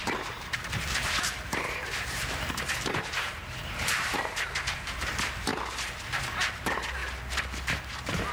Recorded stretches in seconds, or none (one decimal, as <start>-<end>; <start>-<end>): 5.5-6.2; 7.0-7.9